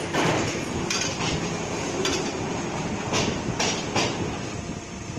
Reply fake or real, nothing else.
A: real